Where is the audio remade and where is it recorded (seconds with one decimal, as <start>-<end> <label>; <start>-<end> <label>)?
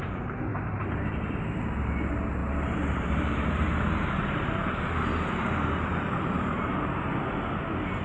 0.0-0.5 recorded; 0.5-1.4 remade; 1.4-2.4 recorded; 2.4-6.9 remade; 6.9-8.0 recorded